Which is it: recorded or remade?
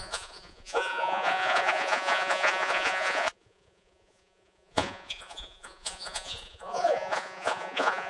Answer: remade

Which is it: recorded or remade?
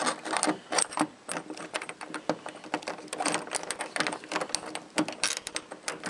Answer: recorded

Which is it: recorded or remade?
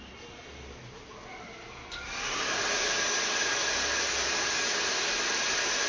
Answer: recorded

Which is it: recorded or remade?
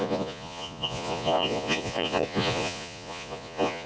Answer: remade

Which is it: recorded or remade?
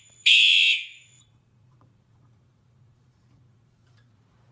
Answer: remade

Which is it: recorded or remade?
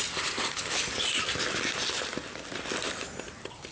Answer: recorded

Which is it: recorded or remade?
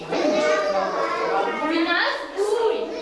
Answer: remade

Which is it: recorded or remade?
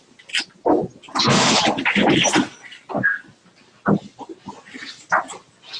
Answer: recorded